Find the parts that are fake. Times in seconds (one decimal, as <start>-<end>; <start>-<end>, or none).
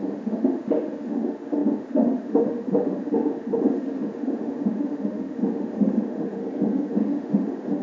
0.0-6.4; 6.9-7.8